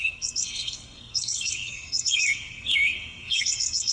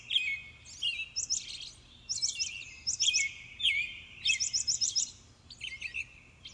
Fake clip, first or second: first